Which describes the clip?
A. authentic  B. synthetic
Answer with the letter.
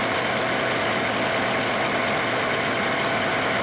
A